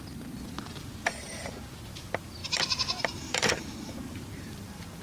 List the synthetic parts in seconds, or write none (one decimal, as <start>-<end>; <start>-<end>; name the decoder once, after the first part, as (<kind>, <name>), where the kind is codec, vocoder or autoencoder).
0.7-1.5 (vocoder, BigVGAN v2); 2.4-5.0